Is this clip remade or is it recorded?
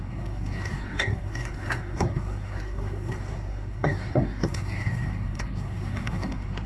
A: remade